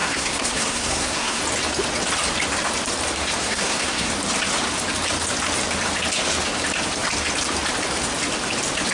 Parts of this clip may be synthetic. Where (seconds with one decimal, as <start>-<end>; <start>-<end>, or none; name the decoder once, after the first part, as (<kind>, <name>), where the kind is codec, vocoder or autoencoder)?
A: 0.0-1.4 (codec, SNAC); 3.4-4.1